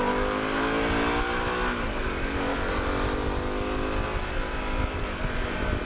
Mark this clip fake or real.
real